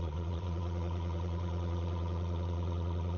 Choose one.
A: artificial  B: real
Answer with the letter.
A